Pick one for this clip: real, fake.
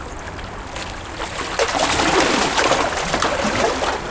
real